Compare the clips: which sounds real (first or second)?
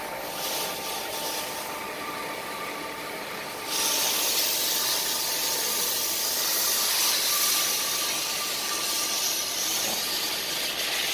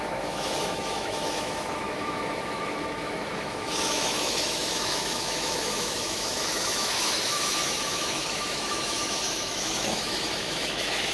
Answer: first